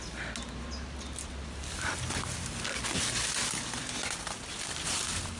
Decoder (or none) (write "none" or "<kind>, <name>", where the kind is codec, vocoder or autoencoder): none